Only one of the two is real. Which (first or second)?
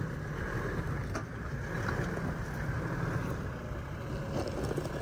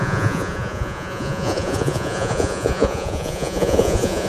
first